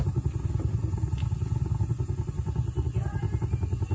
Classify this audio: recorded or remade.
recorded